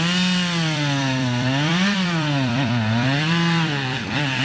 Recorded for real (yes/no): no